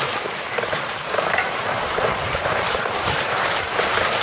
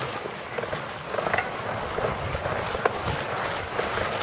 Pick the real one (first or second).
second